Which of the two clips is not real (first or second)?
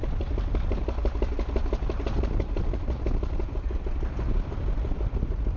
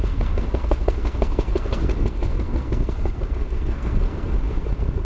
second